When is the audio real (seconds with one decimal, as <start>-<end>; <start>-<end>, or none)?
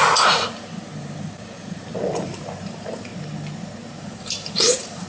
0.0-1.0; 1.9-2.4; 3.1-4.0